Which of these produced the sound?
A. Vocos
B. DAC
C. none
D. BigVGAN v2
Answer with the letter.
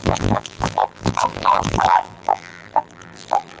D